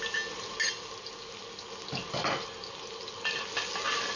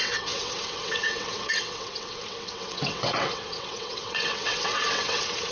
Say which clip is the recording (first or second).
first